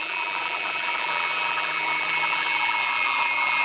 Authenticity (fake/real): fake